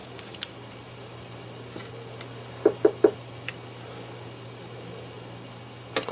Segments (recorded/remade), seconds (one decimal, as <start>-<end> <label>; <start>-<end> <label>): 0.0-0.7 remade; 0.7-6.1 recorded